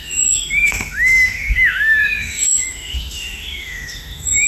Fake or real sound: fake